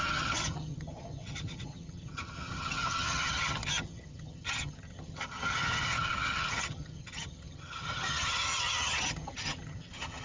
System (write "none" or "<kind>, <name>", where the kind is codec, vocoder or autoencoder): vocoder, HiFi-GAN